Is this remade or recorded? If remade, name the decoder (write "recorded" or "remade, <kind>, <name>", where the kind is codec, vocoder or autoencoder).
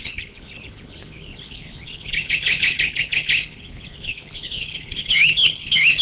remade, codec, HILCodec